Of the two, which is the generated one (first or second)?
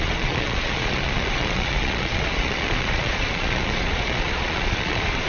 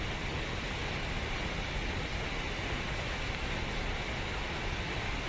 first